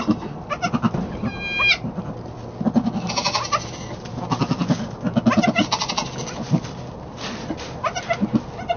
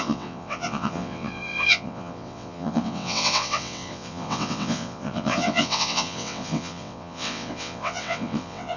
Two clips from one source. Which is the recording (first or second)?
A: first